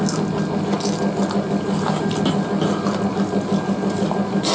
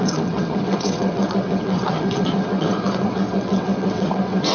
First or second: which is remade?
second